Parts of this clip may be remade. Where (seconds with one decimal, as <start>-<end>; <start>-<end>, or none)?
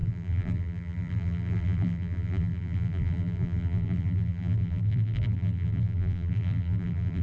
0.0-7.2